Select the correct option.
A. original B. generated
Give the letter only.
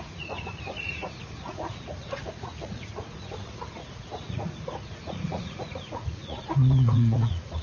B